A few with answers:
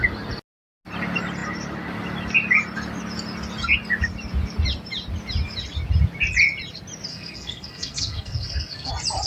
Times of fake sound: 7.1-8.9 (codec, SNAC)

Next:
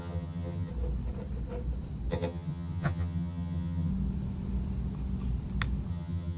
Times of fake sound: 0.0-0.7 (vocoder, HiFi-GAN); 2.1-3.9; 5.9-6.4

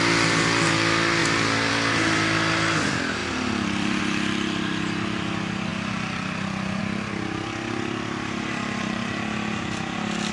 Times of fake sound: 3.2-4.0 (vocoder, BigVGAN v2)

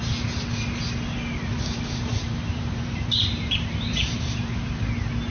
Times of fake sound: 1.5-4.7 (vocoder, BigVGAN v2)

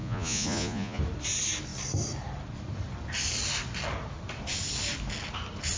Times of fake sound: 0.0-1.0 (vocoder, Vocos)

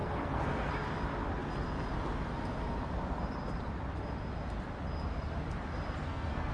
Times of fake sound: 0.0-0.7 (codec, SNAC); 6.0-6.5

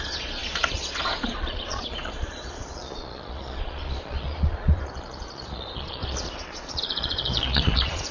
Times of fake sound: 0.0-8.1 (vocoder, Vocos)